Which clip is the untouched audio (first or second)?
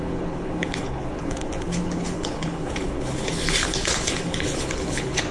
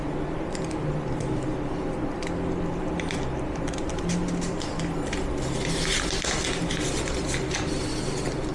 second